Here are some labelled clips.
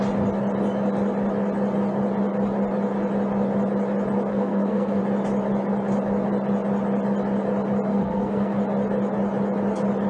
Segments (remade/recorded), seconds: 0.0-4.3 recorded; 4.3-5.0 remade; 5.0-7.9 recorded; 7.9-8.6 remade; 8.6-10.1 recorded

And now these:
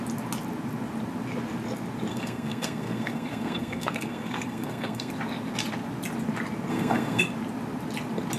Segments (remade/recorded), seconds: 0.0-2.1 recorded; 2.1-5.1 remade; 5.1-6.7 recorded; 6.7-7.2 remade; 7.2-8.4 recorded

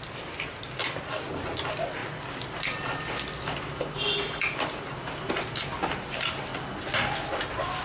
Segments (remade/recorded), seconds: 0.0-7.8 recorded

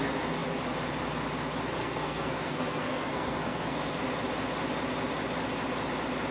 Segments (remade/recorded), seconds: 0.0-1.8 recorded; 1.8-4.0 remade; 4.0-6.3 recorded

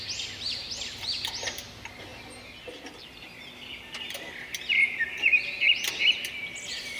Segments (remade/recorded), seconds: 0.0-7.0 recorded

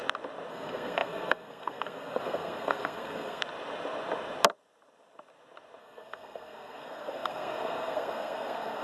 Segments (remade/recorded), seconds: 0.0-0.5 recorded; 0.5-3.4 remade; 3.4-5.8 recorded; 5.8-8.8 remade